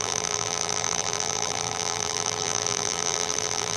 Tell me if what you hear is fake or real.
fake